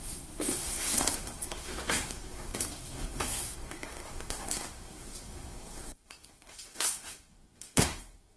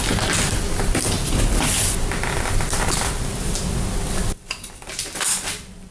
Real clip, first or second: second